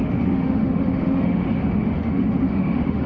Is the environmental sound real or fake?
fake